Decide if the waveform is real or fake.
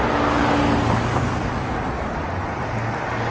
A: real